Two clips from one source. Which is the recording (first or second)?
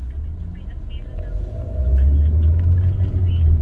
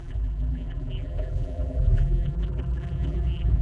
first